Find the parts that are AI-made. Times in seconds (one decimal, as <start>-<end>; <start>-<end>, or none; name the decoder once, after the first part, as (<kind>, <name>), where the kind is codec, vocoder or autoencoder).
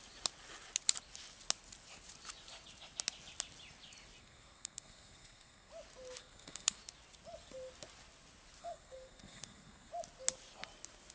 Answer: 4.2-5.7 (codec, SNAC); 6.2-6.8; 8.6-9.9